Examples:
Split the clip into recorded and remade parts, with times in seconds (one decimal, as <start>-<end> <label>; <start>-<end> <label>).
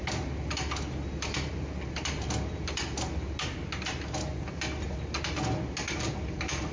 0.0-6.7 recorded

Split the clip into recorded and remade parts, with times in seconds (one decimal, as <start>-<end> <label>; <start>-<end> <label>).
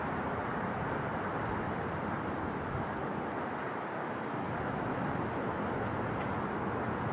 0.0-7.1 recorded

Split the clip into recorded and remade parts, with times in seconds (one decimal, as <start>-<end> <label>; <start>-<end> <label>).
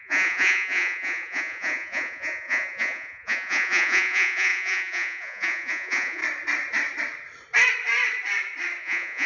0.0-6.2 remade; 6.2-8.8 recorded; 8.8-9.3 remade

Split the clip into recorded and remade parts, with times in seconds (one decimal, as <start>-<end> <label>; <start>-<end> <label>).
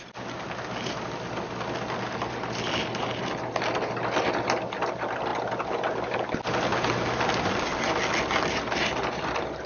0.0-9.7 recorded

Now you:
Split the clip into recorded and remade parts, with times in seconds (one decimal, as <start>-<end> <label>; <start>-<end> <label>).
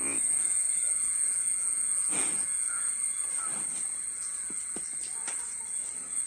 0.0-3.0 remade; 3.0-4.1 recorded; 4.1-4.6 remade; 4.6-6.3 recorded